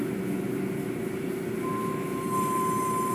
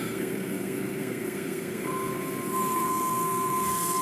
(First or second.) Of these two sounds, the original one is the first